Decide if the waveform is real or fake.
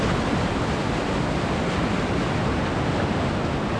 real